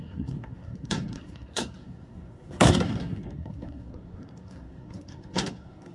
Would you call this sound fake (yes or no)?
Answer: yes